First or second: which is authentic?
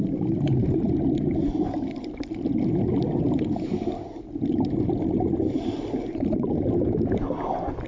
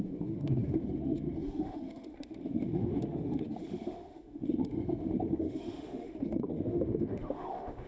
first